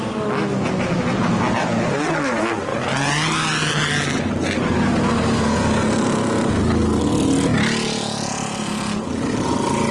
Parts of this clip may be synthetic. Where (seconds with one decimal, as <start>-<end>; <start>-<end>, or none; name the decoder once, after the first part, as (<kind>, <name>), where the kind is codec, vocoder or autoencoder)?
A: none